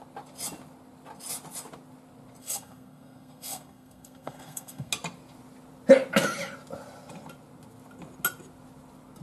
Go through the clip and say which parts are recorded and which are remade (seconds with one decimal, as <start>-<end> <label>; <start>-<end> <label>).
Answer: 0.0-2.4 recorded; 2.4-4.9 remade; 4.9-9.2 recorded